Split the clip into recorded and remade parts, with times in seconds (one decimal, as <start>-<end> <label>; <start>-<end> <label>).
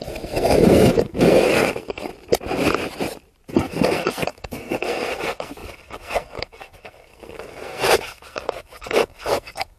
0.0-2.1 remade; 2.1-3.5 recorded; 3.5-9.8 remade